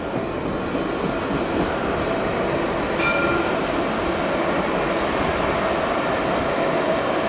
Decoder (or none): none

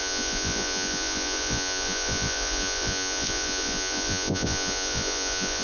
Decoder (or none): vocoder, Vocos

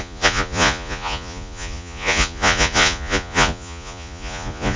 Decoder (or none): vocoder, Vocos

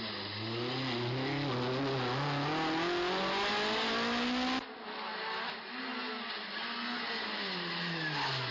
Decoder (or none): none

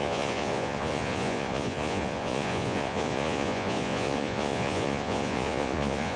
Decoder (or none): vocoder, Vocos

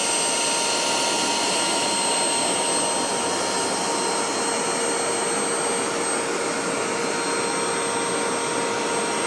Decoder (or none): none